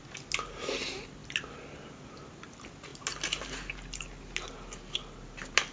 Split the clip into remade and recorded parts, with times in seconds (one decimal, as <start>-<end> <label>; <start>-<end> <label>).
0.0-5.7 recorded

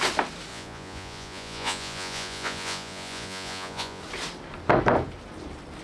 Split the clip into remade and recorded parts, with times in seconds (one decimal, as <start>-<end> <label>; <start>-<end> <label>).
0.0-0.5 recorded; 0.5-4.0 remade; 4.0-5.8 recorded

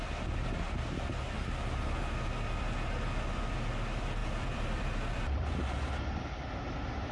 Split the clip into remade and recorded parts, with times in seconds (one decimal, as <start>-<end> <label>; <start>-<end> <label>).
0.0-4.2 recorded; 4.2-5.7 remade; 5.7-7.1 recorded

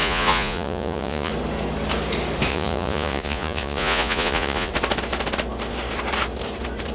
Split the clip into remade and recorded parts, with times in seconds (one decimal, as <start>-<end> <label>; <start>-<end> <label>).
0.0-1.3 remade; 1.3-2.5 recorded; 2.5-4.7 remade; 4.7-6.9 recorded

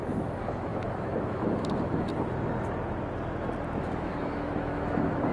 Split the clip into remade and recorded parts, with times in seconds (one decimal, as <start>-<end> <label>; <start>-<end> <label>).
0.0-2.1 remade; 2.1-3.8 recorded; 3.8-5.3 remade